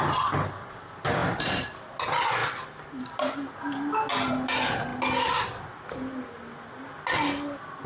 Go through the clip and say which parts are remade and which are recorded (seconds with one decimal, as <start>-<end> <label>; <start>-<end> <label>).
0.0-1.2 recorded; 1.2-1.8 remade; 1.8-7.9 recorded